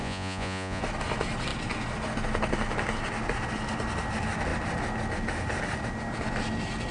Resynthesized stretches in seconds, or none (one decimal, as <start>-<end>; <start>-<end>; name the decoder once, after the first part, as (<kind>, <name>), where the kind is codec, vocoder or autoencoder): 0.0-0.8 (vocoder, Vocos)